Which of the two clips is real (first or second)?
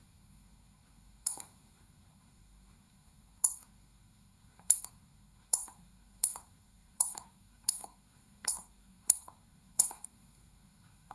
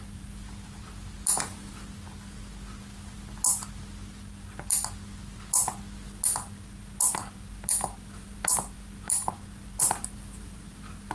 second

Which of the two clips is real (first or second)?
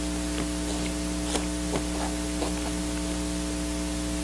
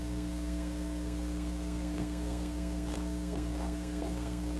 first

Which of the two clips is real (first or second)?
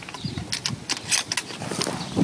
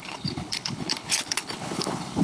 first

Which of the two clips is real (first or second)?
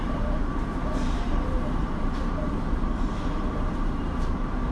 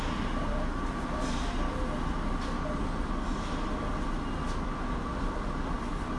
second